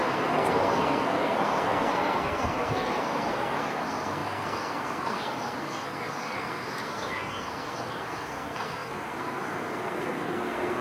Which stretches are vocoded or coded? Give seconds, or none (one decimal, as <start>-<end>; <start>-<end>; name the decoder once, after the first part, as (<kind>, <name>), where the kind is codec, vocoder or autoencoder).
0.0-10.8 (codec, SNAC)

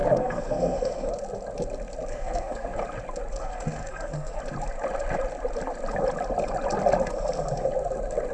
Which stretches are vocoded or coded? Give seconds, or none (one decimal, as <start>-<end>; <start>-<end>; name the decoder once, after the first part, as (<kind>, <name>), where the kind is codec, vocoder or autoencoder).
0.0-1.1 (codec, SNAC); 2.1-2.8; 3.4-4.4

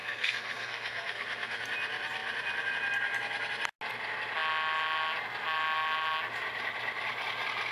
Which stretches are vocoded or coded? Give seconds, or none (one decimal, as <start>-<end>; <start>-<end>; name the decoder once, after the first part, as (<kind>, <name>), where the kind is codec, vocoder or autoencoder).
0.0-1.6 (codec, SNAC)

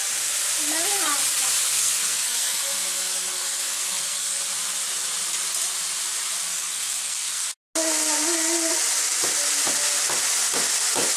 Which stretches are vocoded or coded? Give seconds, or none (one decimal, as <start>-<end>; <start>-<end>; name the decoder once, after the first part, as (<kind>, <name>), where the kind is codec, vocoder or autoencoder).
1.8-4.4 (codec, SNAC); 6.5-7.5

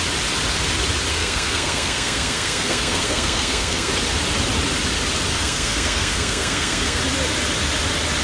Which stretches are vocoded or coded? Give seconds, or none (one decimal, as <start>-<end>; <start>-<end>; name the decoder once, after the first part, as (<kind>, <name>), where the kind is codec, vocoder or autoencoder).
1.1-3.9 (codec, SNAC); 5.4-7.0

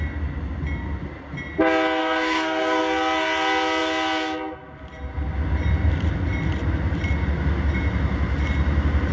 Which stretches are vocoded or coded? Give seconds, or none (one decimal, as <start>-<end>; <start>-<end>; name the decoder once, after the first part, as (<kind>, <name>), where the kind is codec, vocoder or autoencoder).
2.0-2.8 (codec, SNAC)